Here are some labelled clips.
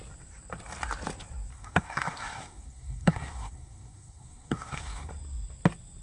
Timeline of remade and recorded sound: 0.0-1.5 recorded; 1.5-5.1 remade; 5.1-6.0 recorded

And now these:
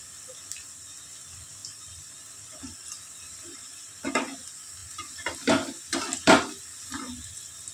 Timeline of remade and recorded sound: 0.0-1.6 recorded; 1.6-4.0 remade; 4.0-7.7 recorded

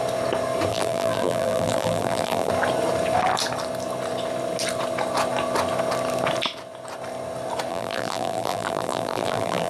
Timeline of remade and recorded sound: 0.0-0.7 recorded; 0.7-2.5 remade; 2.5-7.7 recorded; 7.7-9.7 remade

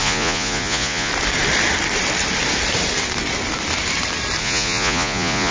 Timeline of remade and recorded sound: 0.0-1.1 remade; 1.1-4.4 recorded; 4.4-5.5 remade

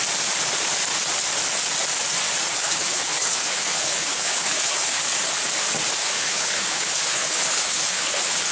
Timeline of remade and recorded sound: 0.0-2.5 recorded; 2.5-5.0 remade; 5.0-6.0 recorded; 6.0-8.5 remade

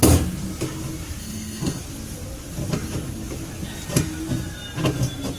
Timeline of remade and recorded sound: 0.0-1.2 recorded; 1.2-1.8 remade; 1.8-5.4 recorded

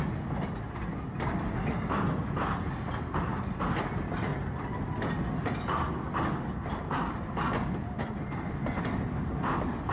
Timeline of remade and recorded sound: 0.0-9.9 recorded